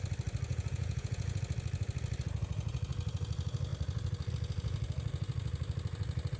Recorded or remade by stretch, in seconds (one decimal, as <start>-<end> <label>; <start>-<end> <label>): 0.0-0.5 recorded; 0.5-1.4 remade; 1.4-6.4 recorded